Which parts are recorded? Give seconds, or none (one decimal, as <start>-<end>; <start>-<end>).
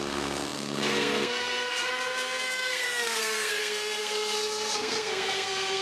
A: none